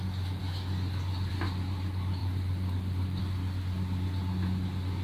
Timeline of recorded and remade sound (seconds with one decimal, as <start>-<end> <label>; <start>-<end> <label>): 0.0-5.0 recorded